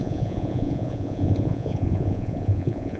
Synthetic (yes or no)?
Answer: yes